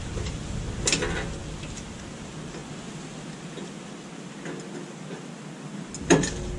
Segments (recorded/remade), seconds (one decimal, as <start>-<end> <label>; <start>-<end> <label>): 0.0-6.6 recorded